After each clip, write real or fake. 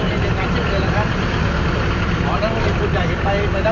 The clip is real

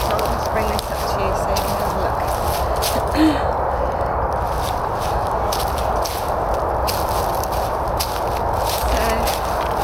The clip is real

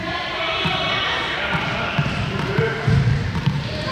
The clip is fake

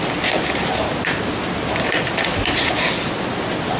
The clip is real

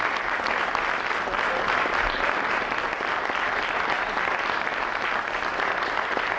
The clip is real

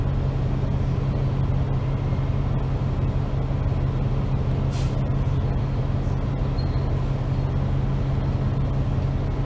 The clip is real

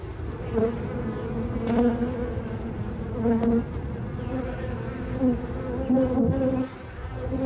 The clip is real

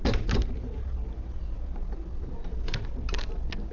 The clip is real